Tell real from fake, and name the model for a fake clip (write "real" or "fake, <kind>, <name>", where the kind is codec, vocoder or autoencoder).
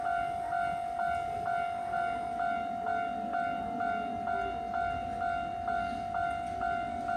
real